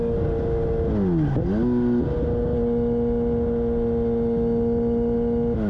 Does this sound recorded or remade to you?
recorded